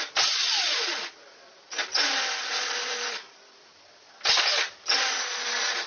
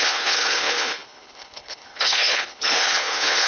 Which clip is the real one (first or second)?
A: first